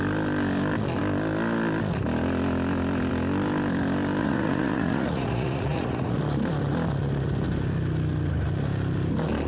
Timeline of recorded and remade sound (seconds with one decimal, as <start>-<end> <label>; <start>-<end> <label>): 0.0-4.2 recorded; 4.2-6.2 remade; 6.2-9.5 recorded